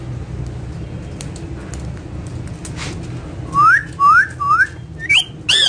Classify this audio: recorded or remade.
recorded